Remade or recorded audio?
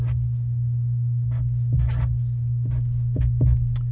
recorded